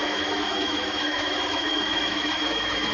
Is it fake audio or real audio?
fake